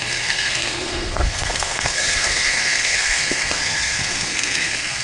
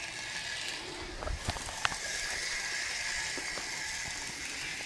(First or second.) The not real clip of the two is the first